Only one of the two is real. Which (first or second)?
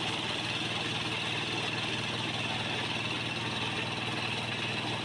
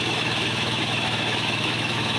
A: first